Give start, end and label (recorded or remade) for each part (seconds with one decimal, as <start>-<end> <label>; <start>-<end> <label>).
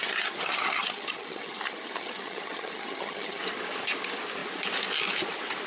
0.0-3.4 remade; 3.4-5.7 recorded